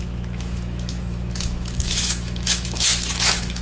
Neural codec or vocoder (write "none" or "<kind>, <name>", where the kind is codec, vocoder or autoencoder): autoencoder, DAC-VAE